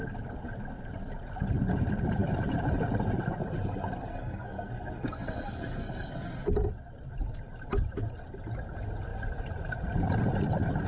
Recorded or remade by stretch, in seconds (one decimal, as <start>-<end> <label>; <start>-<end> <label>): 0.0-4.1 recorded; 4.1-6.4 remade; 6.4-10.9 recorded